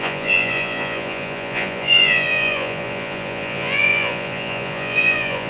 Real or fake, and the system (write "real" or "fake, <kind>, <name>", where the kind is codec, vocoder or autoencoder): fake, vocoder, Vocos